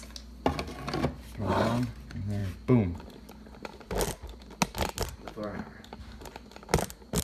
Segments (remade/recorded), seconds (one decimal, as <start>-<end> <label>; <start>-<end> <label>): 0.0-7.2 recorded